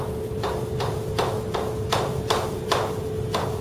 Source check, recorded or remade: recorded